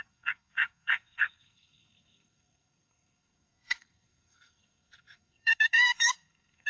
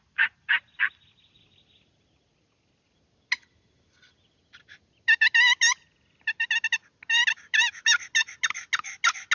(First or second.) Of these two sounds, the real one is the second